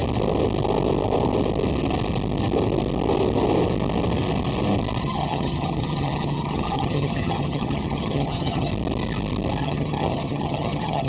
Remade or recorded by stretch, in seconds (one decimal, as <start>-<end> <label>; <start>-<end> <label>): 0.0-5.0 recorded; 5.0-8.7 remade; 8.7-9.6 recorded; 9.6-11.1 remade